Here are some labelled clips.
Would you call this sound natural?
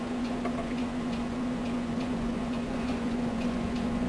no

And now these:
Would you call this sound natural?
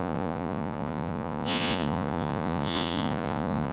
no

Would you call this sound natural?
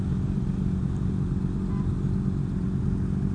yes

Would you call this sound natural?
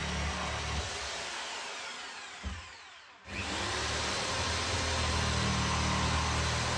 yes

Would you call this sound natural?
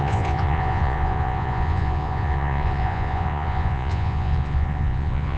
no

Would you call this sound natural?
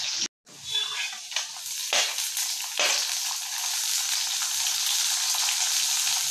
yes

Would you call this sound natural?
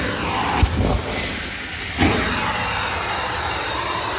yes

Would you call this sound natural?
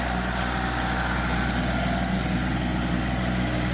yes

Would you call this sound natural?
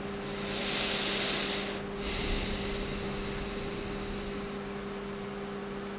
yes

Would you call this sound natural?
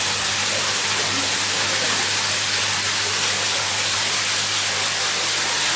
yes